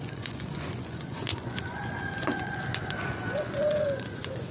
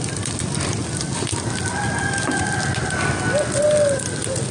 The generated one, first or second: first